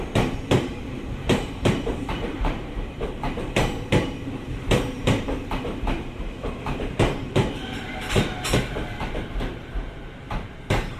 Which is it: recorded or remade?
remade